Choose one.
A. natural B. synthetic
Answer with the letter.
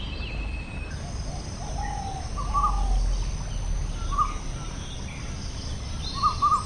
A